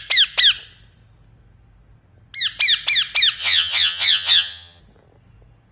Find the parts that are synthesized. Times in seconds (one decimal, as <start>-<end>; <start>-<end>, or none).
3.4-4.8